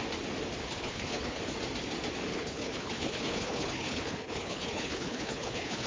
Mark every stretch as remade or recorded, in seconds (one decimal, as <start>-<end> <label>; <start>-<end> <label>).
0.0-0.6 recorded; 0.6-1.4 remade; 1.4-2.3 recorded; 2.3-5.9 remade